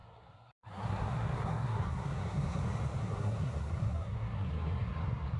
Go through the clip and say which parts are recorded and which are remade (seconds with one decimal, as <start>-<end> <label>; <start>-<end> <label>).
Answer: 0.0-2.6 remade; 2.6-3.0 recorded; 3.0-5.4 remade